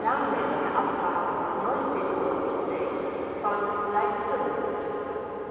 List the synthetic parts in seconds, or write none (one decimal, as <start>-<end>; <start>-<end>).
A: none